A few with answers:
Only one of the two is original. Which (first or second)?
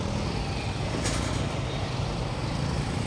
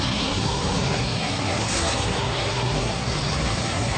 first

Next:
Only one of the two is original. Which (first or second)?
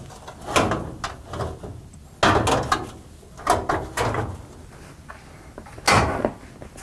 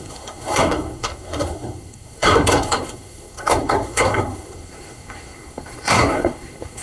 first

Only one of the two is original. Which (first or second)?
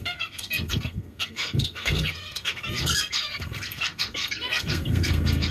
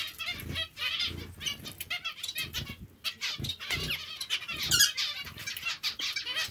second